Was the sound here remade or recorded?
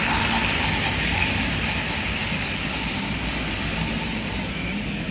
remade